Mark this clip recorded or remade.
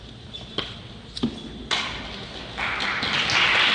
recorded